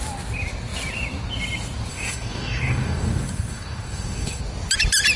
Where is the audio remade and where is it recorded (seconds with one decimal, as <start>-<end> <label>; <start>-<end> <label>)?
0.0-1.9 recorded; 1.9-4.4 remade; 4.4-5.2 recorded